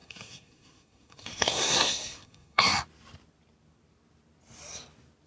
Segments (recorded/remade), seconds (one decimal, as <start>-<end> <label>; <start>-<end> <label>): 0.0-2.7 remade; 2.7-5.3 recorded